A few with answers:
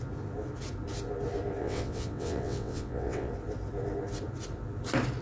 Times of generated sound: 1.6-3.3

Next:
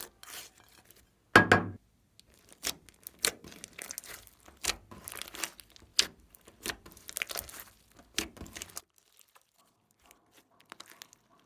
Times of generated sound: 5.9-7.1

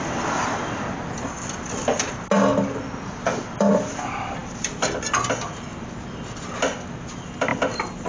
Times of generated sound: 4.4-5.1; 7.5-8.1

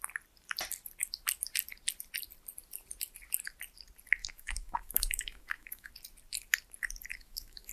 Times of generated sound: 4.2-5.9; 7.1-7.7

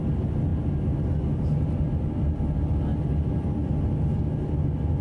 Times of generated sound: none